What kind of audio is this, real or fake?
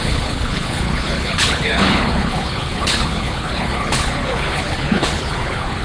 fake